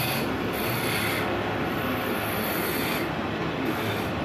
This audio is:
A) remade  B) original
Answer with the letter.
B